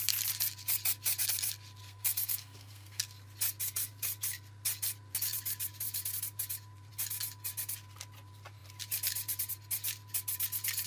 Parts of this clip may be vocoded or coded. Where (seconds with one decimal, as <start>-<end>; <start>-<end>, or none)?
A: 1.8-3.0